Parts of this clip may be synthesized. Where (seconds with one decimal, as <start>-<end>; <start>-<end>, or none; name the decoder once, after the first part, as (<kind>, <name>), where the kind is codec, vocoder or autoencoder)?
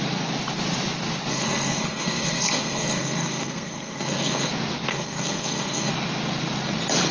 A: 1.3-4.5 (codec, SNAC); 4.9-5.9